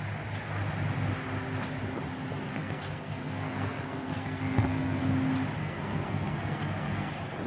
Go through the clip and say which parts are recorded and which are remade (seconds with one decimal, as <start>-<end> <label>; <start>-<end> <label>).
0.0-2.5 recorded; 2.5-5.0 remade; 5.0-5.6 recorded; 5.6-7.1 remade; 7.1-7.5 recorded